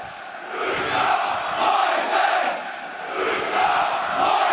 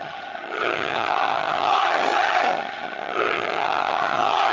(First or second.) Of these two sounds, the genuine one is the first